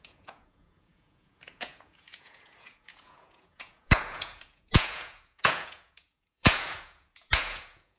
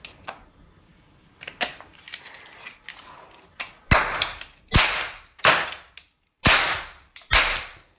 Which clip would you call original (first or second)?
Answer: second